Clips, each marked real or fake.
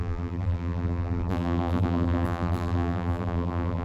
fake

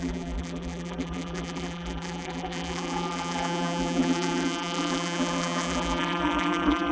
fake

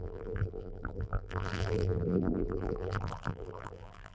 fake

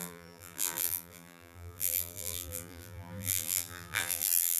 fake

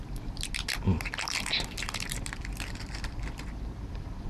real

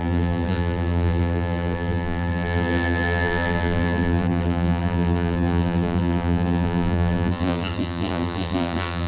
fake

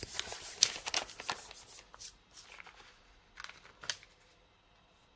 real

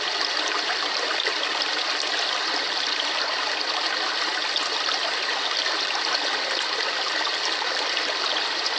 real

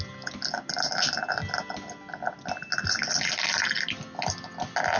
real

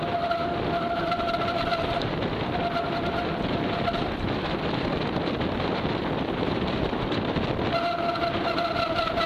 fake